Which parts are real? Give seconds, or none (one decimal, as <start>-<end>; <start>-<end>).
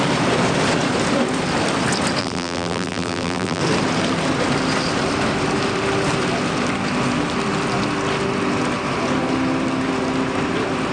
0.0-2.2; 3.6-10.9